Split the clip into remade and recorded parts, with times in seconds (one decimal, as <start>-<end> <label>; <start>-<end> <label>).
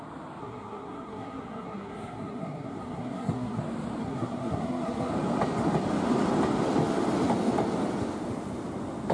0.0-0.4 recorded; 0.4-3.6 remade; 3.6-4.0 recorded; 4.0-5.1 remade; 5.1-9.1 recorded